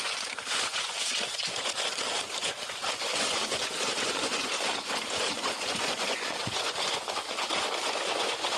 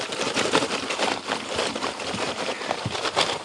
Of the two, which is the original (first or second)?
second